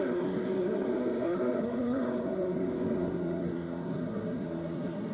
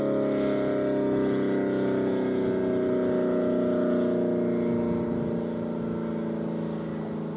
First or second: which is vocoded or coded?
first